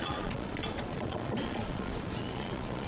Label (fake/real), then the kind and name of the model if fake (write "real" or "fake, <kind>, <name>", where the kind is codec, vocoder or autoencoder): fake, vocoder, Vocos